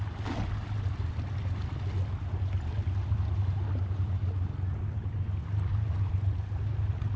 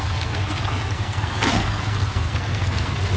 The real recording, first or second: first